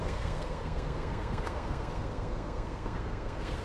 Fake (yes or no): yes